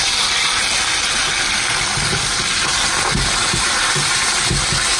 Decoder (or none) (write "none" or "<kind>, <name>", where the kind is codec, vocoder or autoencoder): none